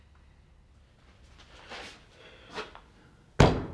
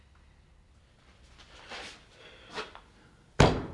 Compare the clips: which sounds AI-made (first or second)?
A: second